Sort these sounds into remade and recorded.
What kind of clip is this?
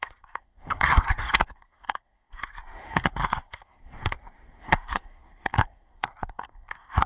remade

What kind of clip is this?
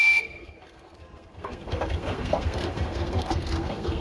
remade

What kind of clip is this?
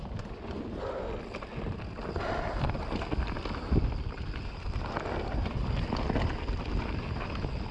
recorded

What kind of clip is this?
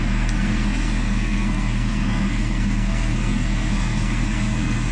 remade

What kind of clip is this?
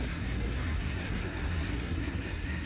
remade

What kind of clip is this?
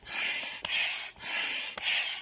recorded